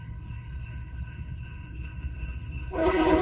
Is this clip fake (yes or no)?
yes